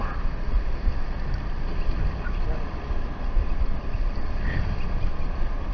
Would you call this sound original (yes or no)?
yes